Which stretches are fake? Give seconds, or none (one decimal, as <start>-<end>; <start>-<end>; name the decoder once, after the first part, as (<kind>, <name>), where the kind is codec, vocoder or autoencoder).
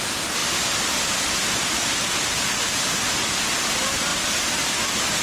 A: 0.0-5.2 (vocoder, BigVGAN v2)